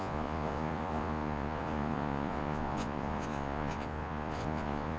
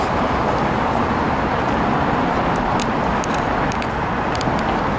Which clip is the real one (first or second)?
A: second